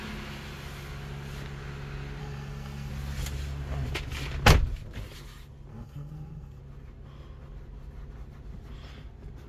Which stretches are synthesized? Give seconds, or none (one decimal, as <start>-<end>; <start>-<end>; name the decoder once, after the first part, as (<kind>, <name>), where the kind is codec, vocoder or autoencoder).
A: 2.2-2.9 (codec, SNAC); 5.7-6.6